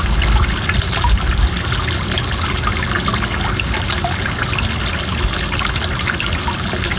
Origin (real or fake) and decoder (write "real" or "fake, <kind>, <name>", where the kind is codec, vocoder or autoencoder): real